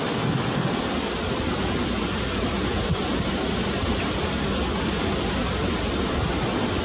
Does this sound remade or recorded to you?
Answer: recorded